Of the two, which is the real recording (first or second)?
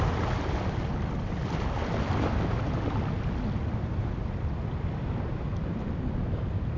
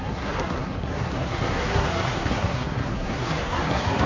first